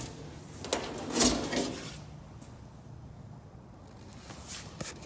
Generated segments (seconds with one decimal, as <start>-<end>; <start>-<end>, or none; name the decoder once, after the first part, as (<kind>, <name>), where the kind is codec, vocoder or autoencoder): none